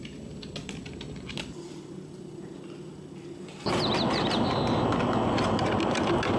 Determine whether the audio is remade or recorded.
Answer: recorded